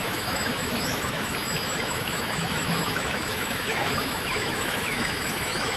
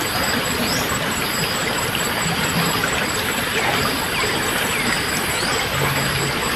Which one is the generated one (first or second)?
first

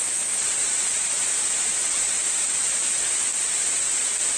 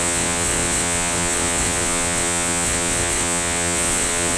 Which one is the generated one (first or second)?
second